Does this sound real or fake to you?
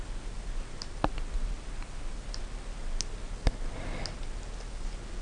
real